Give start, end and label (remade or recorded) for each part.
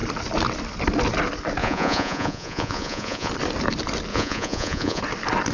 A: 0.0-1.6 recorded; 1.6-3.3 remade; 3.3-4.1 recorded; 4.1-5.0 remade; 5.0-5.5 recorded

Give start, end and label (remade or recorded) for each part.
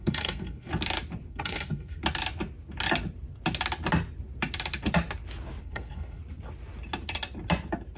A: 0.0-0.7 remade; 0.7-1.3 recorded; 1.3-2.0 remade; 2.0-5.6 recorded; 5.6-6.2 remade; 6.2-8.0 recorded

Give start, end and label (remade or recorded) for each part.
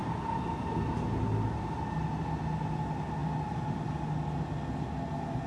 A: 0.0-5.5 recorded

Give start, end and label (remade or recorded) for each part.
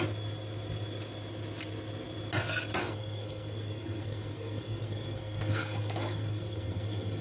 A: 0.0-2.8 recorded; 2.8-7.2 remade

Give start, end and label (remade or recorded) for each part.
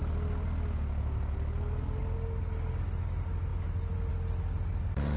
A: 0.0-5.2 recorded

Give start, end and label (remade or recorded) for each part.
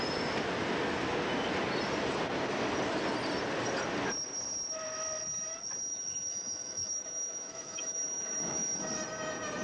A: 0.0-5.9 recorded; 5.9-8.8 remade; 8.8-9.6 recorded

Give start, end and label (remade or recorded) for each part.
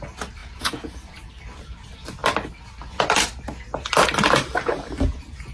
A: 0.0-0.4 recorded; 0.4-1.3 remade; 1.3-5.5 recorded